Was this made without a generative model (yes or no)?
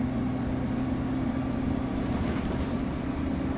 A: yes